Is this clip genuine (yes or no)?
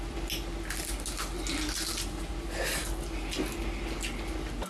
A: yes